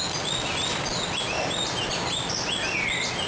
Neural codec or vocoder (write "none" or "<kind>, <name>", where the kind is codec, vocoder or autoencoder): none